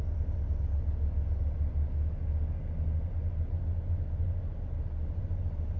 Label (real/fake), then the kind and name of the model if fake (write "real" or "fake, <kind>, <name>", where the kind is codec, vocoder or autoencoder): real